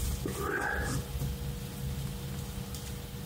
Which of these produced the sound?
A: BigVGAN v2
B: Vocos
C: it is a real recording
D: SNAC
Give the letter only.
C